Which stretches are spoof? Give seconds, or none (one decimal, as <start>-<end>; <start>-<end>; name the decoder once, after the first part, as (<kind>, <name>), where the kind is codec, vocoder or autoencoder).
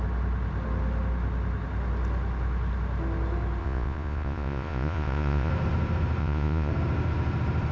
3.6-5.5 (vocoder, Vocos); 6.2-6.7